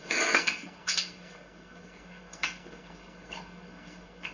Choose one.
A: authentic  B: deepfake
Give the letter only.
B